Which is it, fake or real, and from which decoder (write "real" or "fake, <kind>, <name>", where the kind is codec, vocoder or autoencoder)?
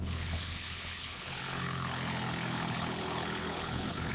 fake, codec, HILCodec